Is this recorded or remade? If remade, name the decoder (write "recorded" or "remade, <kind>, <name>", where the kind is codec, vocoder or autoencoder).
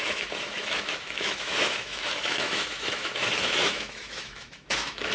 remade, autoencoder, DAC-VAE